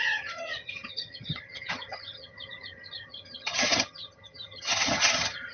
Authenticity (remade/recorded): remade